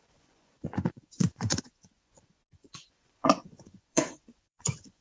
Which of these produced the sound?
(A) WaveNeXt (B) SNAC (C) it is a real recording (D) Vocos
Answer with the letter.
D